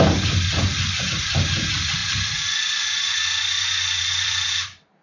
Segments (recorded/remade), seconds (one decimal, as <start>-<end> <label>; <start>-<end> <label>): 0.0-2.0 remade; 2.0-4.0 recorded; 4.0-5.0 remade